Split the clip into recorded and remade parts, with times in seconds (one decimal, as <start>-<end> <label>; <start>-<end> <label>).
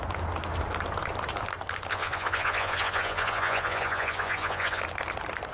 0.0-1.9 recorded; 1.9-4.8 remade; 4.8-5.5 recorded